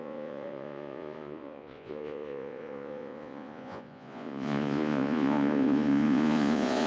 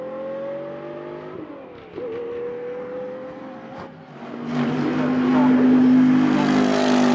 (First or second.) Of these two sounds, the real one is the second